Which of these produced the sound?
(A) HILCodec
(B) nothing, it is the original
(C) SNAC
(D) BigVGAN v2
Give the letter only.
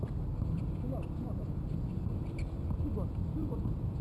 D